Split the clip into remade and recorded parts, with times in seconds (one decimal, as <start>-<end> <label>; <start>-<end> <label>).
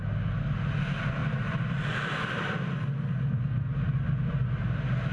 0.0-1.2 recorded; 1.2-4.3 remade; 4.3-5.1 recorded